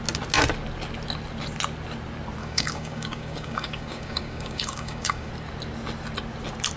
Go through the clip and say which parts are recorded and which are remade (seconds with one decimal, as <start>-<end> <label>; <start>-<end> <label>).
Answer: 0.0-2.4 recorded; 2.4-5.3 remade; 5.3-6.8 recorded